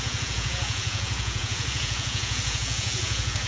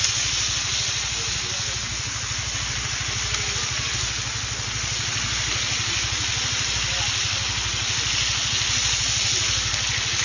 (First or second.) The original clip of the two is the second